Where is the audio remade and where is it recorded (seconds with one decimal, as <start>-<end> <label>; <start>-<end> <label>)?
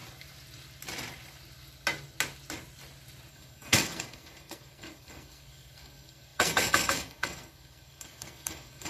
0.0-3.3 recorded; 3.3-8.9 remade